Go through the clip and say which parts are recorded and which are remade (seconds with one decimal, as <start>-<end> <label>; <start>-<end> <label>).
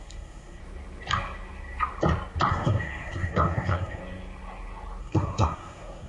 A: 0.0-0.6 remade; 0.6-2.5 recorded; 2.5-4.0 remade; 4.0-5.0 recorded; 5.0-6.1 remade